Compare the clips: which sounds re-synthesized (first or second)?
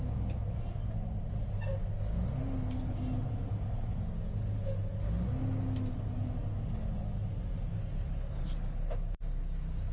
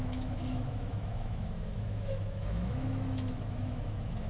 second